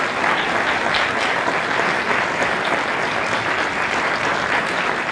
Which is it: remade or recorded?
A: recorded